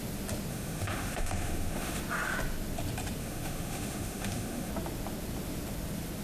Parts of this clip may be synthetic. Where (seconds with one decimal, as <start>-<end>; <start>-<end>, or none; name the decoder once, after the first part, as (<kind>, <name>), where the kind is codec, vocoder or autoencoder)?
0.5-2.0 (autoencoder, DAC-VAE); 3.2-4.7